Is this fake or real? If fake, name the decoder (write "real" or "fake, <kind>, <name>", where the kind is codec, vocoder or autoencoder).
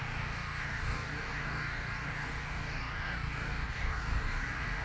fake, codec, DAC